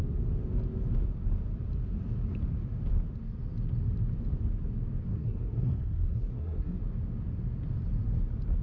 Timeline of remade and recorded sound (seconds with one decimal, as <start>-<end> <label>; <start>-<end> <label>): 0.0-5.1 recorded; 5.1-6.8 remade; 6.8-8.6 recorded